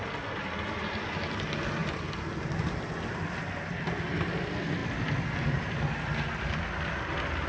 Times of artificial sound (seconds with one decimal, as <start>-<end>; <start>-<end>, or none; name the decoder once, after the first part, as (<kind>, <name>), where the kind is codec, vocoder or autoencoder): none